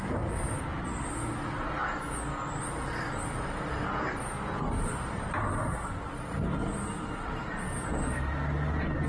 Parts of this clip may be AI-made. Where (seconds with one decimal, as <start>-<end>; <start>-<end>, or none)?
none